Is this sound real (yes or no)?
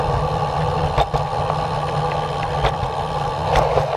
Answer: yes